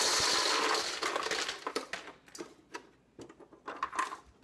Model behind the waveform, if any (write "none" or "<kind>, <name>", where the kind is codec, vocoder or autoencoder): none